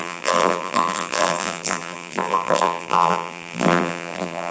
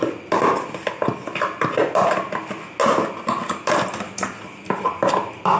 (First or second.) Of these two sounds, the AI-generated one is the first